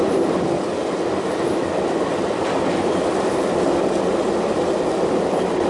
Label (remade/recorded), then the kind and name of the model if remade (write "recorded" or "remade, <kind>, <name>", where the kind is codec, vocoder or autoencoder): recorded